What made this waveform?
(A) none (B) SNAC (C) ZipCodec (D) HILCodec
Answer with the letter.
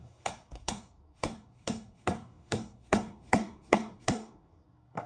B